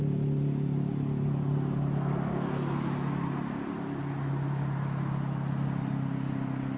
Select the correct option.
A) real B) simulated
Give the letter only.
A